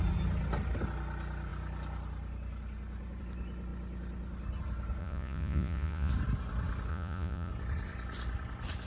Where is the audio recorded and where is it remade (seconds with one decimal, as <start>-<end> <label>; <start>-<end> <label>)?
0.0-5.0 recorded; 5.0-6.1 remade; 6.1-6.9 recorded; 6.9-7.5 remade; 7.5-8.9 recorded